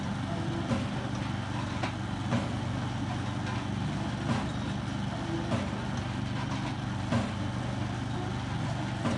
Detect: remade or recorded recorded